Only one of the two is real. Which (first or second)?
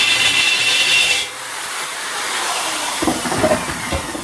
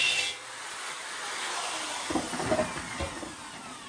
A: second